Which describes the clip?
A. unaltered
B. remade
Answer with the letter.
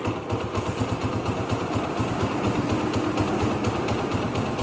A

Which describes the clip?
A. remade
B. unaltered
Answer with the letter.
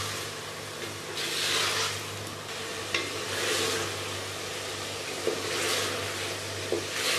B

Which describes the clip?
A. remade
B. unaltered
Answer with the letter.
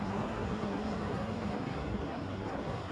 A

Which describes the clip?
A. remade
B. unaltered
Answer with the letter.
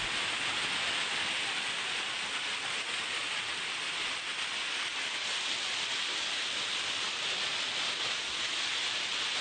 B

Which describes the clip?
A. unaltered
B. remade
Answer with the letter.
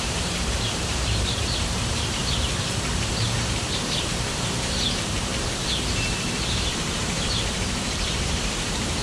B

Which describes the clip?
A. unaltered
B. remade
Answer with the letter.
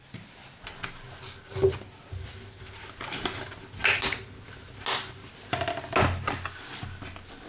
A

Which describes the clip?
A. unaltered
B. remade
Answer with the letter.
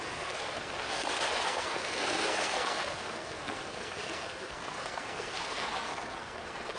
B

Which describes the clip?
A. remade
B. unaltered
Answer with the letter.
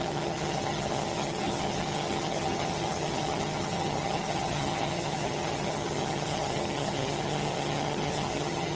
A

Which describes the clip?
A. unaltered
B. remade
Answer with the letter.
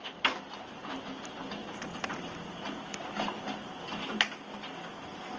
A